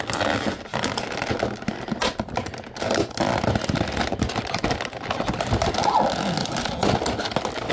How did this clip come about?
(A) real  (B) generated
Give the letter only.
A